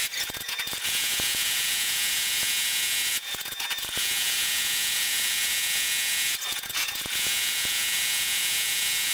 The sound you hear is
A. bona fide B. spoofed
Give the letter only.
B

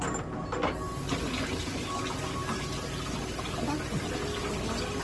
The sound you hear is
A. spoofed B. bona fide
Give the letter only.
B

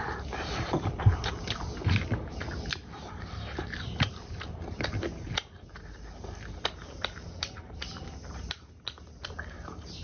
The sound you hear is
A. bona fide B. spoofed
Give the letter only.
B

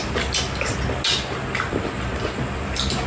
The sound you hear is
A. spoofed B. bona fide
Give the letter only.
B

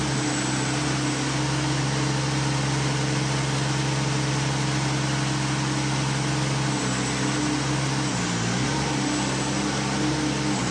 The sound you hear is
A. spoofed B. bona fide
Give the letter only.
B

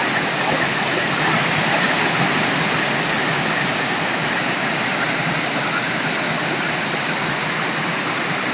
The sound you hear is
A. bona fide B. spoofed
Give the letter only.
A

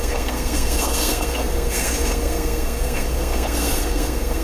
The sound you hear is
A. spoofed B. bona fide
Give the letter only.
A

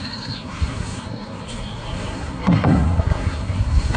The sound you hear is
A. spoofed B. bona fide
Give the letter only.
A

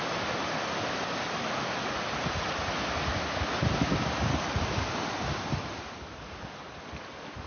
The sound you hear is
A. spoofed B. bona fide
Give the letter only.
B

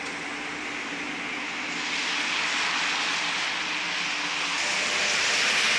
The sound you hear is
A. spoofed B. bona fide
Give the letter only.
B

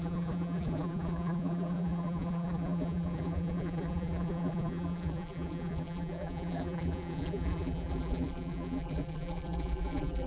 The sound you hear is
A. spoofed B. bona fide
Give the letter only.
A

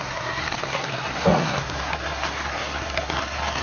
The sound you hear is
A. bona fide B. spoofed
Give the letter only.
B